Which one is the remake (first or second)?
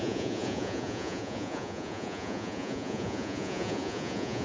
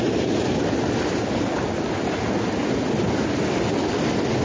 first